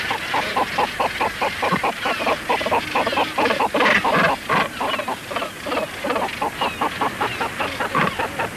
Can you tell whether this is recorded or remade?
recorded